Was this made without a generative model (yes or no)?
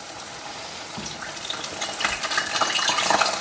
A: yes